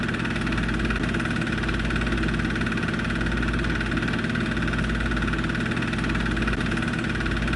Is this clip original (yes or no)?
yes